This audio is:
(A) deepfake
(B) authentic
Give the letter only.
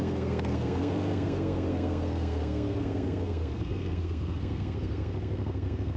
A